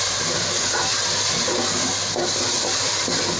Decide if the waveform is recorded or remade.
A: recorded